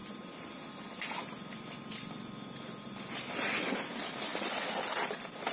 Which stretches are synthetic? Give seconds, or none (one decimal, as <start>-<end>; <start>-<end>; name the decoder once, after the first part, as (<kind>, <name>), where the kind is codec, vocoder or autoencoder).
none

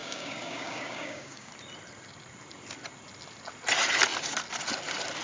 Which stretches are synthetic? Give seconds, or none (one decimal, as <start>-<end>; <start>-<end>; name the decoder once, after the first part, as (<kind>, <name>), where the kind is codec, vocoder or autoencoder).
0.0-1.5 (codec, DAC)